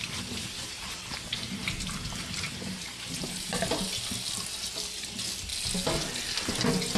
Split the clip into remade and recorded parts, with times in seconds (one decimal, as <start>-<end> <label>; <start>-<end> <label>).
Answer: 0.0-0.4 recorded; 0.4-4.1 remade; 4.1-7.0 recorded